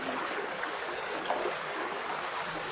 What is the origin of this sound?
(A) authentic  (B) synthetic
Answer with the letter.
B